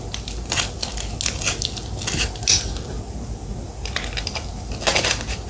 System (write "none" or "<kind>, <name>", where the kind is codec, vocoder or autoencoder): none